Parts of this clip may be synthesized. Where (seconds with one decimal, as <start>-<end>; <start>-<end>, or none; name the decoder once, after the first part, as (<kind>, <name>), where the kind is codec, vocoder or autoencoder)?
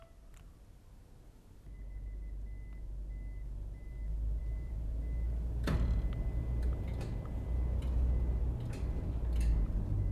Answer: 4.4-5.0 (vocoder, Vocos)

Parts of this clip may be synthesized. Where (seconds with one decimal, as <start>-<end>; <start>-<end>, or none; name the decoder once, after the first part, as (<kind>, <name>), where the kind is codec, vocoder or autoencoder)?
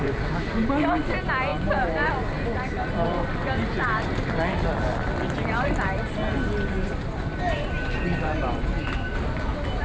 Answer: 1.5-2.1 (vocoder, BigVGAN v2)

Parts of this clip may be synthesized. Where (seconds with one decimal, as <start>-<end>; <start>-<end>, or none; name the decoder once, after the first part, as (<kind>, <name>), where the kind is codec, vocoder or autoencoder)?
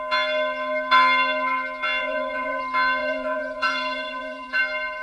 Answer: 2.0-2.6 (vocoder, Vocos); 3.0-4.6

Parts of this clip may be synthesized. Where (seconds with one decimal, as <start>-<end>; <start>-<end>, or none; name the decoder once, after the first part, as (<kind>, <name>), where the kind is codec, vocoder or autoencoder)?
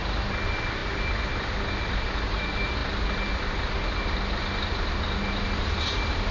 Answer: none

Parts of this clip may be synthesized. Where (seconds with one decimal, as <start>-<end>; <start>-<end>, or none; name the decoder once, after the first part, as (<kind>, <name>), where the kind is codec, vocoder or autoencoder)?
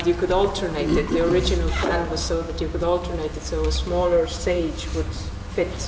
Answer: 1.8-3.0 (codec, DAC); 3.8-4.6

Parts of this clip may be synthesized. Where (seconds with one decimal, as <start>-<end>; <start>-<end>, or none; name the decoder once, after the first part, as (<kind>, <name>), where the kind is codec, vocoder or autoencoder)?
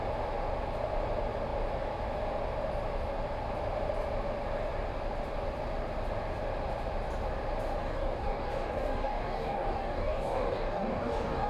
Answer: 7.8-11.5 (codec, DAC)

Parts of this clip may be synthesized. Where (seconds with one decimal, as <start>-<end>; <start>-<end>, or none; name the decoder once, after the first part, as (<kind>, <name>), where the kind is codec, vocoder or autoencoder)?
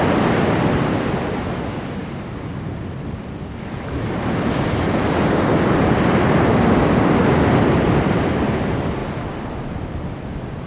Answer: none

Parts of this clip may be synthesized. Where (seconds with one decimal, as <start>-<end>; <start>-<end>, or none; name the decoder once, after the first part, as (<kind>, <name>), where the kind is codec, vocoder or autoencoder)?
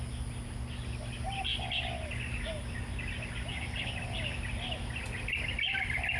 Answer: none